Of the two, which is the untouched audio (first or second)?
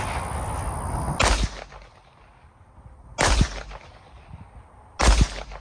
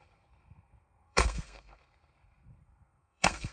first